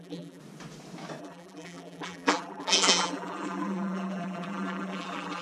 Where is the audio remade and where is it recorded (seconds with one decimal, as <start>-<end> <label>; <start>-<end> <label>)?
0.0-0.4 remade; 0.4-1.2 recorded; 1.2-5.4 remade